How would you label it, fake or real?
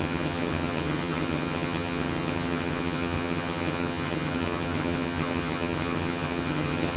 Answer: fake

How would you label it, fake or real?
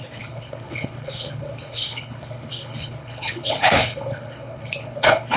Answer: fake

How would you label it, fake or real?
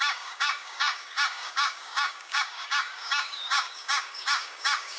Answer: fake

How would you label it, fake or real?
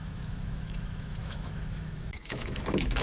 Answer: fake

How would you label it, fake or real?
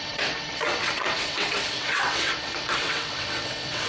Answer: fake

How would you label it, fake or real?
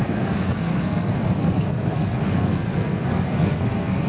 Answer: fake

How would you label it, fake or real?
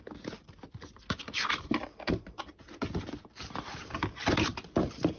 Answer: real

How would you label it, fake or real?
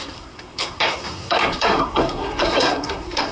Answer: fake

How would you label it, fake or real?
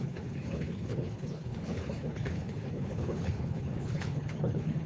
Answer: fake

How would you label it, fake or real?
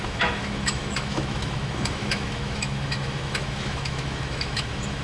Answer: fake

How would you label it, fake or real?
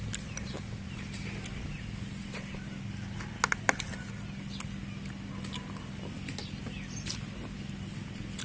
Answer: real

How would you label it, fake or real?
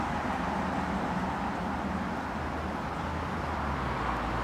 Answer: real